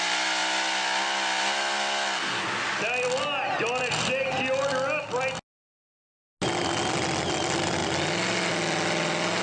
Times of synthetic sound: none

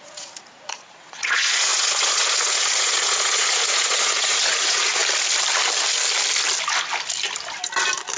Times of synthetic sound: 0.0-5.0

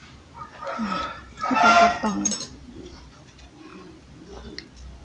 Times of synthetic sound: 0.0-3.0